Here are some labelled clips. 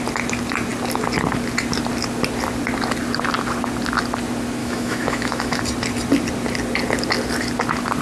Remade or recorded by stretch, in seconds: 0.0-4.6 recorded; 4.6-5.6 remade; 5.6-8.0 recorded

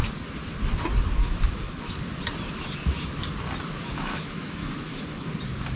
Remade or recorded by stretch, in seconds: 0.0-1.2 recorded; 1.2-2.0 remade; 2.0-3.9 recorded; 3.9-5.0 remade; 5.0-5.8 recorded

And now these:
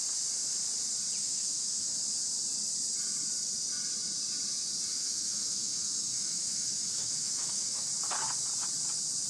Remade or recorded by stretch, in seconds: 0.0-1.2 recorded; 1.2-2.0 remade; 2.0-4.9 recorded; 4.9-7.9 remade; 7.9-9.3 recorded

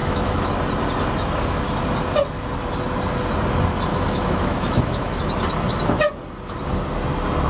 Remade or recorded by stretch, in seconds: 0.0-0.5 remade; 0.5-3.9 recorded; 3.9-5.2 remade; 5.2-7.5 recorded

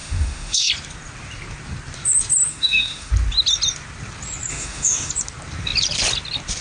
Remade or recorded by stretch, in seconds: 0.0-0.7 remade; 0.7-2.5 recorded; 2.5-3.1 remade; 3.1-4.5 recorded; 4.5-5.1 remade; 5.1-6.6 recorded